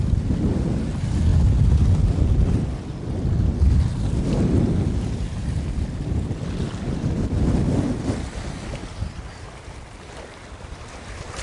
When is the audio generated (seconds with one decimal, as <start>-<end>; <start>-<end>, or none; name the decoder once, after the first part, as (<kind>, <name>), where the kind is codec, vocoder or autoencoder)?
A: none